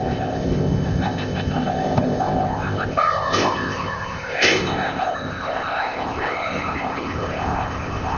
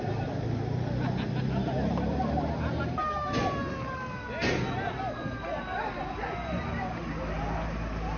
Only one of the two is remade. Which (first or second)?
first